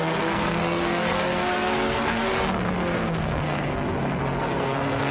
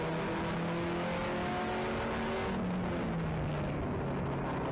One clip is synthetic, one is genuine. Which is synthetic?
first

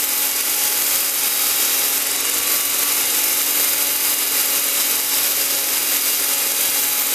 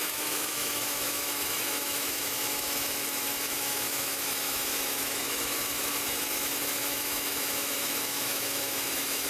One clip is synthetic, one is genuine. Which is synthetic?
second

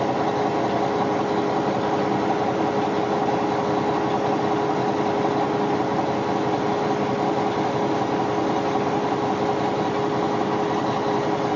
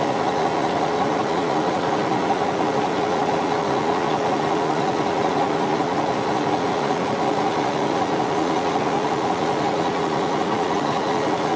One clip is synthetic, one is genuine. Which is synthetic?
second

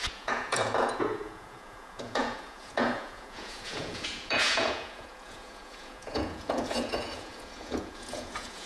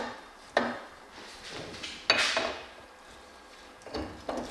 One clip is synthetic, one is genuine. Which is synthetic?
first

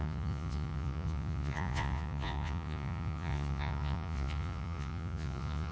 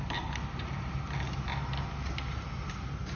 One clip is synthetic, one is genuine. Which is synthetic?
first